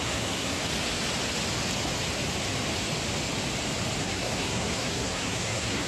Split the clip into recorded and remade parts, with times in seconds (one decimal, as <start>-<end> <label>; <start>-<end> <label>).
0.0-0.6 remade; 0.6-4.0 recorded; 4.0-5.9 remade